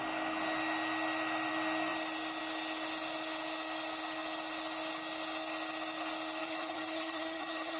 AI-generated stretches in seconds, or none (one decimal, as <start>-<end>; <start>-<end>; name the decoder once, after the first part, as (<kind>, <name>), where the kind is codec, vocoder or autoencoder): 6.4-7.8 (vocoder, HiFi-GAN)